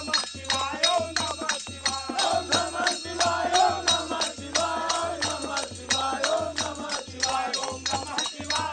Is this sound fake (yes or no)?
no